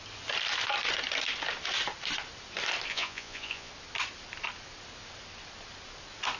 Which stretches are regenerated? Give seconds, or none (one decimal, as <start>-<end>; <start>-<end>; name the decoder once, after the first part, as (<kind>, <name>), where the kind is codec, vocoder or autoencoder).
2.9-3.7 (vocoder, Vocos)